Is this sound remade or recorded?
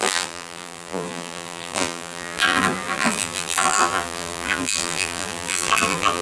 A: remade